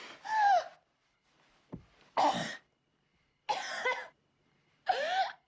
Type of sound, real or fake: real